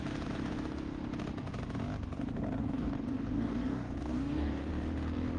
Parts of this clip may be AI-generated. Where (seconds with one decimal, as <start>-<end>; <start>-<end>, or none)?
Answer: 2.6-4.7